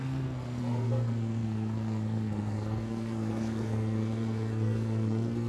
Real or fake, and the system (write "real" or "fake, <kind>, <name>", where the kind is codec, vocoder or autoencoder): fake, codec, SNAC